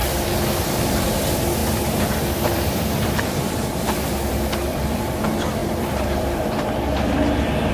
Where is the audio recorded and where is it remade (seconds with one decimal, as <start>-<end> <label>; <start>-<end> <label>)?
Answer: 0.0-1.0 recorded; 1.0-7.7 remade

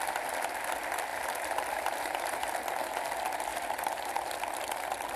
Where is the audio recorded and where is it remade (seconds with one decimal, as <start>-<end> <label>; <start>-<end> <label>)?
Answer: 0.0-1.1 recorded; 1.1-2.5 remade; 2.5-3.5 recorded; 3.5-4.3 remade; 4.3-5.2 recorded

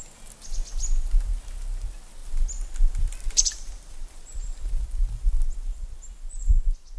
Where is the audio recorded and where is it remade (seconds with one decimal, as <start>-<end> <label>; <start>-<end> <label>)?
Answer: 0.0-2.2 recorded; 2.2-6.4 remade; 6.4-7.0 recorded

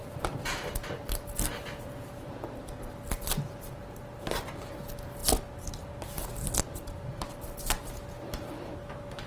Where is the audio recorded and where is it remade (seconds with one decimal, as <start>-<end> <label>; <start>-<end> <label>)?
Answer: 0.0-9.3 recorded